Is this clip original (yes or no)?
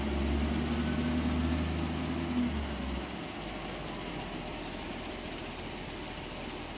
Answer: yes